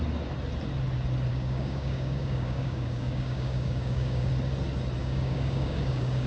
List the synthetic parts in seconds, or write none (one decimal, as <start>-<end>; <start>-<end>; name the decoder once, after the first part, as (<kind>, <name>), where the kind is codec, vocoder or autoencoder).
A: 1.3-4.3 (codec, DAC); 5.0-6.3